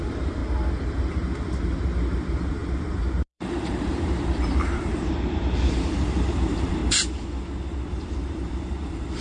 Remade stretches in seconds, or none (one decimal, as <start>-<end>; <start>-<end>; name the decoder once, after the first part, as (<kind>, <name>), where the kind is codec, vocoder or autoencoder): 0.0-0.4 (vocoder, BigVGAN v2); 1.4-6.8; 7.9-9.2